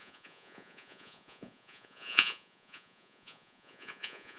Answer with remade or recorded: remade